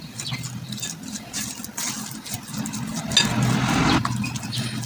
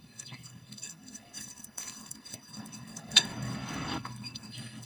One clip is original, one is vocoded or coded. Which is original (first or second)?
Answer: first